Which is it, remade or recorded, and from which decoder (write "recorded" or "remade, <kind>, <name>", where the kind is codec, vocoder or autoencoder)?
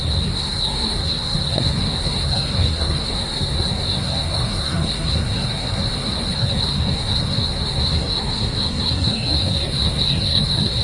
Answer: remade, codec, SNAC